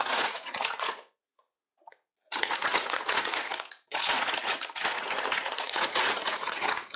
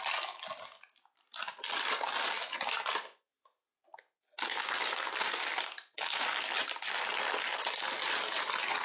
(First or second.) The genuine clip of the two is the second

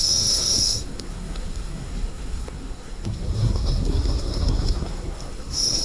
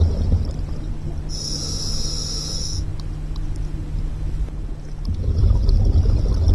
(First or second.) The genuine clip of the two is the second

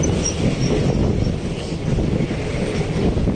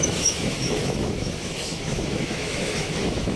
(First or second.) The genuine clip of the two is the first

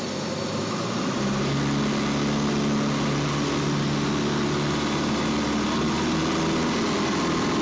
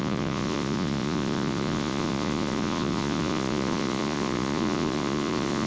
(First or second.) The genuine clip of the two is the first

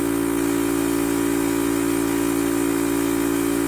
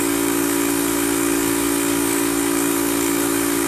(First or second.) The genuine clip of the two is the first